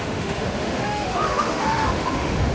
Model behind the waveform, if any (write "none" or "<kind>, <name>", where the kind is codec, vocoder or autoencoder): autoencoder, DAC-VAE